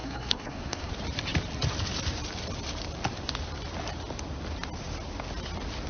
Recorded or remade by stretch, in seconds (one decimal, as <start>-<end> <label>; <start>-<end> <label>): 0.0-0.9 remade; 0.9-5.9 recorded